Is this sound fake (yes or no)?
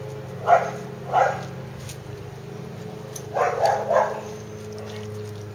no